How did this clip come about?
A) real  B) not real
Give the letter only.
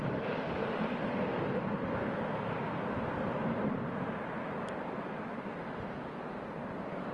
A